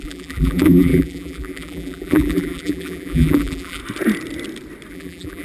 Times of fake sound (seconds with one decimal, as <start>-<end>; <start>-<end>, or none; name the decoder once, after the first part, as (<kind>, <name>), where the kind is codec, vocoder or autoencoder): 0.0-3.8 (vocoder, BigVGAN v2); 4.9-5.4